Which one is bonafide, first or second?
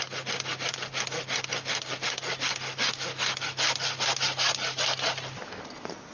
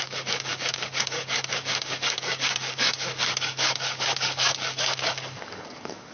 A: first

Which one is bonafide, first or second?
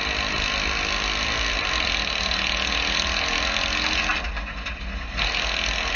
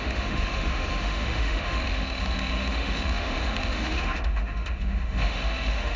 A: first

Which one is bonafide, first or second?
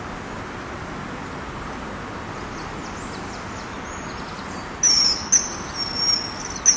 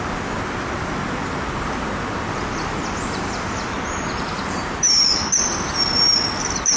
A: first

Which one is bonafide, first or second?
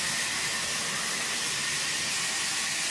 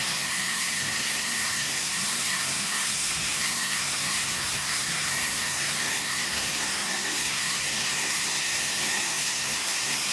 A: first